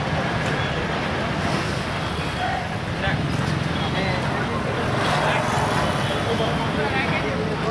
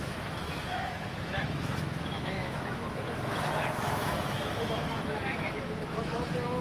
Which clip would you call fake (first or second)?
second